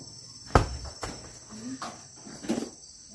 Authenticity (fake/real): real